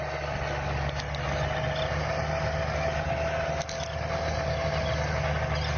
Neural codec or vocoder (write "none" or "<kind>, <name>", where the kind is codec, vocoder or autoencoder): none